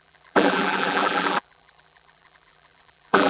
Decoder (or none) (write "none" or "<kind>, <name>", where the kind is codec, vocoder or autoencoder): vocoder, BigVGAN v2